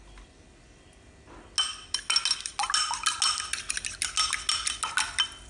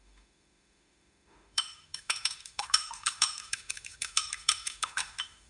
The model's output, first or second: second